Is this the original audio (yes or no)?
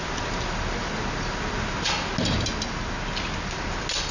yes